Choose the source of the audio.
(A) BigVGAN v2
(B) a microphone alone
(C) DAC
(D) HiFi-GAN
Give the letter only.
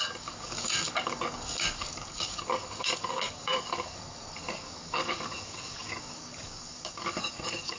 C